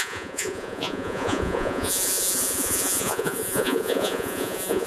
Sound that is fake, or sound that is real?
fake